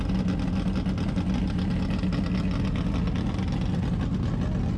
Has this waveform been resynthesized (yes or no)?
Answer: no